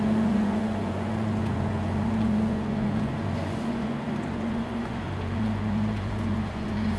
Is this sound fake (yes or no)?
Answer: yes